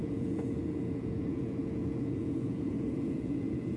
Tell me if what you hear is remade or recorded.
remade